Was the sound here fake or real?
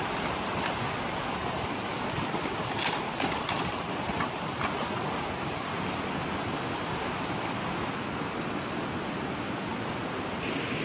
real